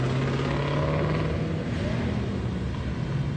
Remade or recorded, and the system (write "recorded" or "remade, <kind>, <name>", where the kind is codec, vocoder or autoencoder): recorded